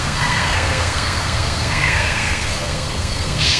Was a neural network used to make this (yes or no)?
yes